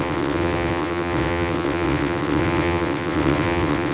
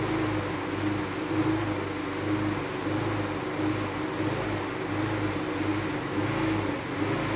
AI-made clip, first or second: first